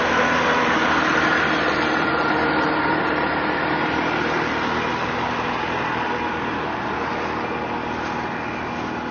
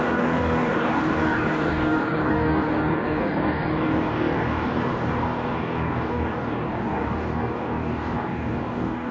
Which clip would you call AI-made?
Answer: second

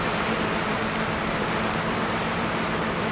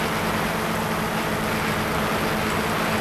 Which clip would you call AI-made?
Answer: first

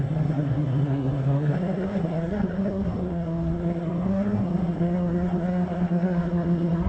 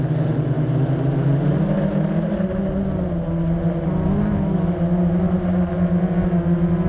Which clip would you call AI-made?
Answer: first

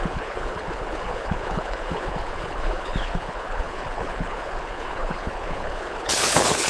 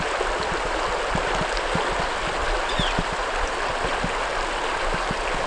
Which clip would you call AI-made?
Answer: first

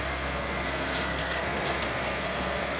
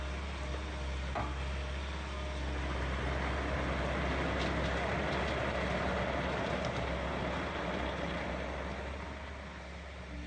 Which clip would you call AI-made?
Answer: first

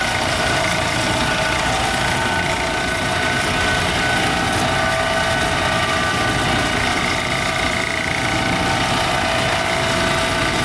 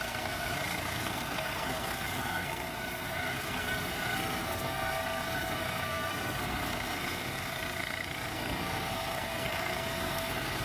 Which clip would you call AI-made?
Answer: second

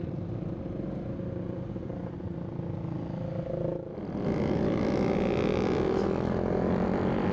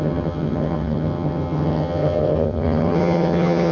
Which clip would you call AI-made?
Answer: second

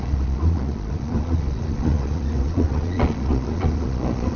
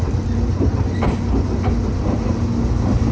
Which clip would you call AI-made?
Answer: first